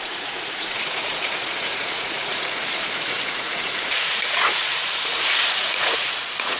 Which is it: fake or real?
fake